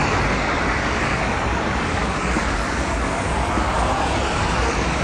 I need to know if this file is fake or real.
fake